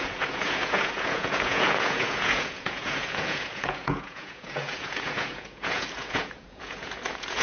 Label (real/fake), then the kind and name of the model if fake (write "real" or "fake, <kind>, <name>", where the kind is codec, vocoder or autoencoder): fake, vocoder, Vocos